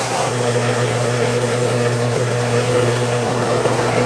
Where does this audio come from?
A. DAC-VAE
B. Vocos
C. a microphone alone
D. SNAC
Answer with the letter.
D